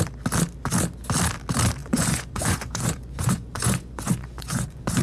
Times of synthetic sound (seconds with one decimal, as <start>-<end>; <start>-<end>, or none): 1.8-5.0